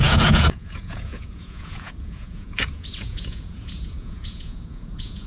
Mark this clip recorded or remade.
remade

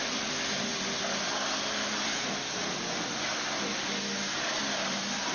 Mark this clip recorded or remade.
recorded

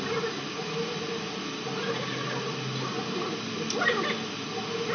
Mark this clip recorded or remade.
recorded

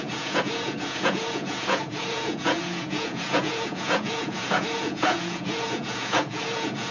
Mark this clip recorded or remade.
remade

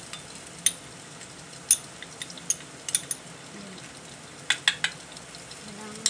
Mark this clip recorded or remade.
recorded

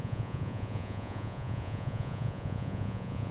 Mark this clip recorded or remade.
remade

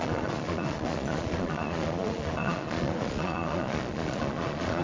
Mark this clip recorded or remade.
remade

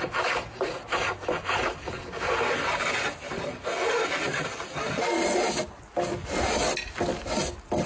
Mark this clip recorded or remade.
recorded